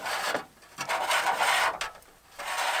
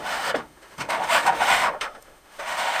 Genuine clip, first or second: first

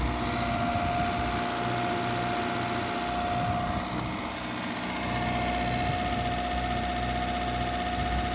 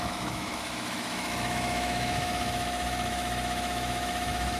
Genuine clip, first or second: first